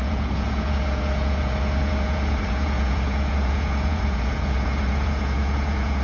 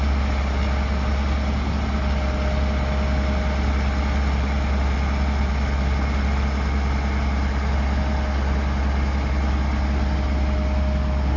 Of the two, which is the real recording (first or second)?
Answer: second